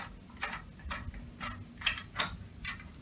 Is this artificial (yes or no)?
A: no